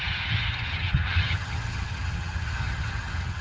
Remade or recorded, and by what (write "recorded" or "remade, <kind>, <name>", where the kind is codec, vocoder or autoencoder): remade, vocoder, HiFi-GAN